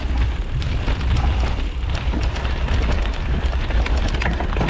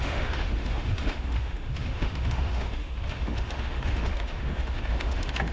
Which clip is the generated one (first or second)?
second